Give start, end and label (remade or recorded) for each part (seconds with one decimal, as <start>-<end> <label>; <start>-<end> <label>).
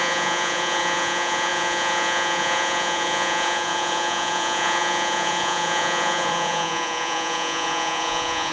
0.0-8.5 remade